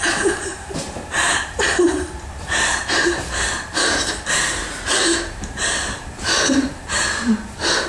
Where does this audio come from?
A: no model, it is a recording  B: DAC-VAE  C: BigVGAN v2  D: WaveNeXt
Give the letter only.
C